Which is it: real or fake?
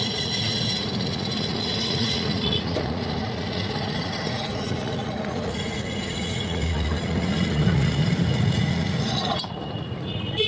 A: fake